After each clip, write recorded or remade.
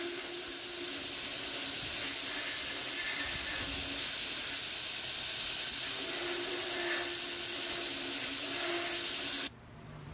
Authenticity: recorded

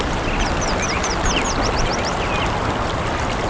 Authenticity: recorded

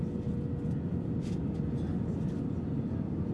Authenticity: recorded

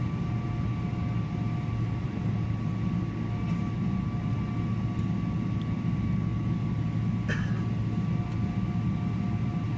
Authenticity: recorded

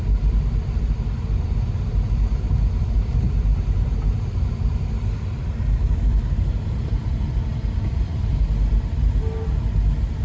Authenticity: recorded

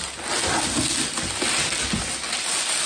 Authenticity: recorded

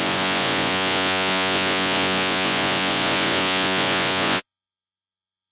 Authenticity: remade